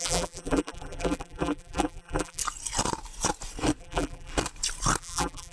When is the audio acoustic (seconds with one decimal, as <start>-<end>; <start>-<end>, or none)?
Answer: 2.4-3.8; 4.3-5.0